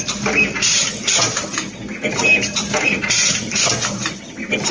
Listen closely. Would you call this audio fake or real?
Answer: real